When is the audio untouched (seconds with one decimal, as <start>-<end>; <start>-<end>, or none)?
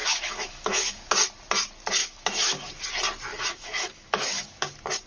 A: 1.1-2.0; 2.7-3.3; 4.6-5.1